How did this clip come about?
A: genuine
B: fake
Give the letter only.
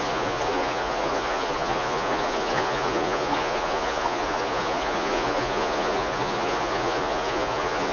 B